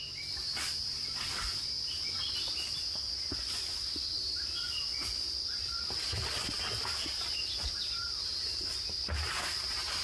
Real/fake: real